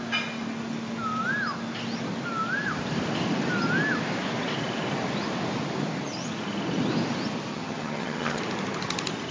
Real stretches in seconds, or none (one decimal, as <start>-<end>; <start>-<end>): 0.0-7.5; 8.4-9.3